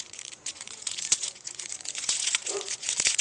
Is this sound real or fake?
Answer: fake